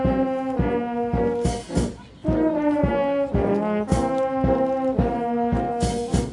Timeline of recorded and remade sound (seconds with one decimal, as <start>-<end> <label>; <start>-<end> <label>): 0.0-6.3 recorded